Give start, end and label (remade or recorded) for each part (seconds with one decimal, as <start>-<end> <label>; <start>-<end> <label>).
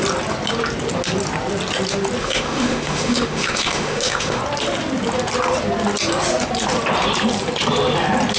0.0-2.2 recorded; 2.2-4.4 remade; 4.4-8.4 recorded